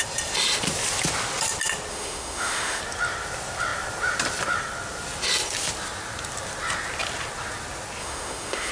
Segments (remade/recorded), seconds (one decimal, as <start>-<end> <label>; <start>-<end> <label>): 0.0-1.9 recorded; 1.9-2.8 remade; 2.8-8.0 recorded; 8.0-8.7 remade